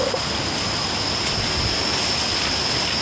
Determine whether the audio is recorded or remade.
recorded